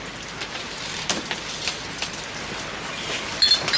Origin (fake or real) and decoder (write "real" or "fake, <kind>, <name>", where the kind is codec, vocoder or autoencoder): real